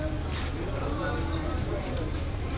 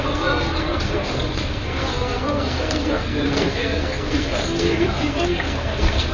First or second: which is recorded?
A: first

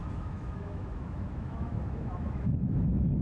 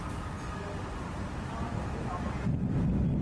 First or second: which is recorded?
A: second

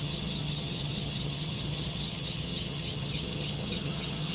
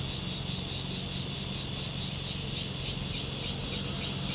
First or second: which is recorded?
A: second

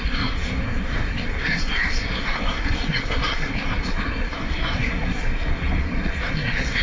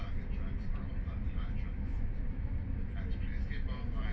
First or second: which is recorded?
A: second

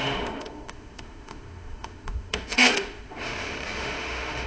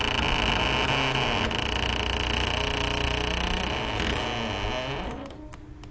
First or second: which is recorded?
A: second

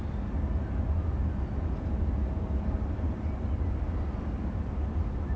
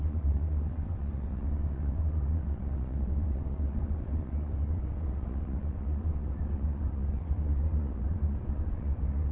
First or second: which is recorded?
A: first